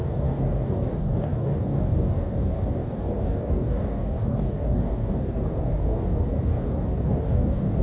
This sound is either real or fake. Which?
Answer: fake